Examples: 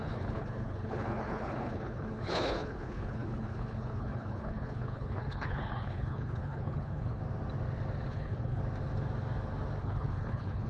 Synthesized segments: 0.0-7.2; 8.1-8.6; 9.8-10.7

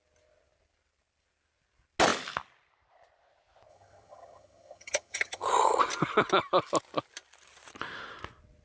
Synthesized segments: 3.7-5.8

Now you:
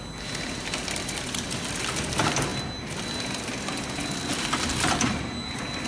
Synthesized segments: none

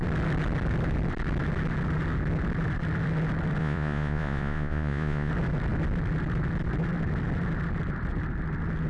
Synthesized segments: 3.6-5.3

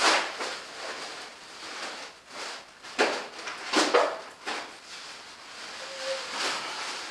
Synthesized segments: none